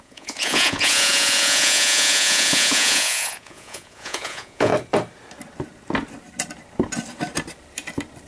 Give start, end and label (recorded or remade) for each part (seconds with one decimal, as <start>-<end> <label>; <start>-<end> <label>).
0.0-4.7 remade; 4.7-8.3 recorded